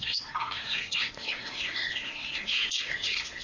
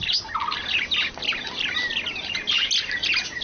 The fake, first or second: first